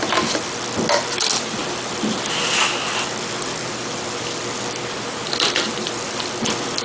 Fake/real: real